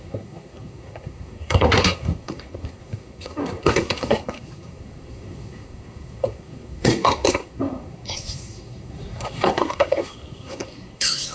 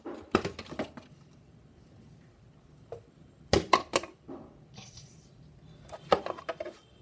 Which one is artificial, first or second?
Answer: first